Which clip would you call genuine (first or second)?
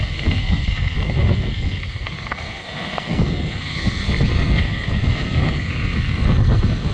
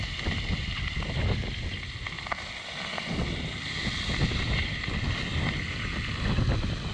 second